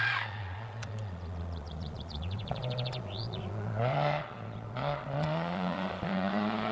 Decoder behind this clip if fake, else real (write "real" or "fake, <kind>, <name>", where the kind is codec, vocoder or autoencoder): fake, vocoder, Vocos